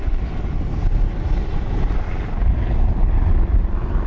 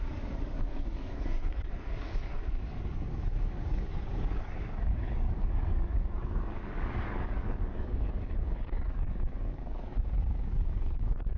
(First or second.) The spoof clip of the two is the second